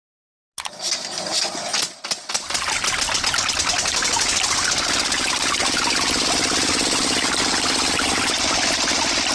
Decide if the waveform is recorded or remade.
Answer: recorded